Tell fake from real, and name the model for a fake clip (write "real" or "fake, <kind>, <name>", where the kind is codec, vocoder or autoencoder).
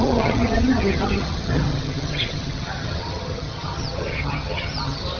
fake, vocoder, HiFi-GAN